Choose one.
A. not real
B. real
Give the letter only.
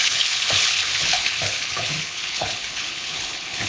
A